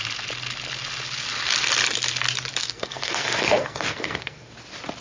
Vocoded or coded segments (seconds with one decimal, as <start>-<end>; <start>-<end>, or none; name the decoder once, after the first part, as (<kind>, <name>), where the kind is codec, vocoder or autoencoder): 2.6-4.5 (codec, SNAC)

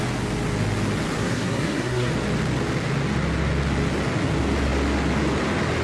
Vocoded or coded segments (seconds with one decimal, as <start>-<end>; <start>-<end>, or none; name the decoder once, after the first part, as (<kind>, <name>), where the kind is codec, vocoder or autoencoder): 1.2-2.1 (codec, SNAC)

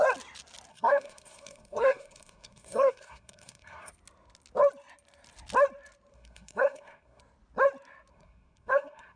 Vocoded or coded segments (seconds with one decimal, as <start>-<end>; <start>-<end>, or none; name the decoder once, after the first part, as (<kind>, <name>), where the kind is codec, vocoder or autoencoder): 0.7-3.9 (codec, SNAC); 6.1-7.2; 8.1-9.2

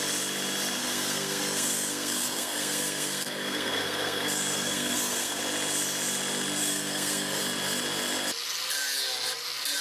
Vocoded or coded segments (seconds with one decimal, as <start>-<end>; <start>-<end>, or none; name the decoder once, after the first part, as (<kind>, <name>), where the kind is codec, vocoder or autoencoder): 0.8-5.4 (codec, SNAC); 6.6-7.4

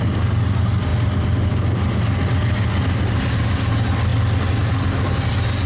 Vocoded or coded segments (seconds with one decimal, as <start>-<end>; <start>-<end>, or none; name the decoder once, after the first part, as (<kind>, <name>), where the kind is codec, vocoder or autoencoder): none